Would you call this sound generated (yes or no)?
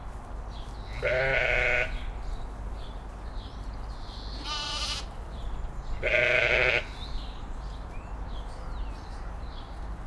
no